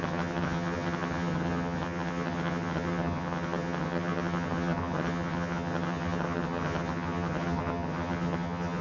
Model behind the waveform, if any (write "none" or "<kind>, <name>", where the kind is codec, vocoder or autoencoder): vocoder, HiFi-GAN